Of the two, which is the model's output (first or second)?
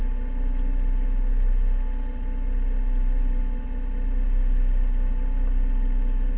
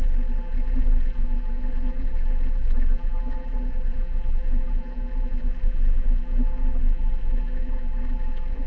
second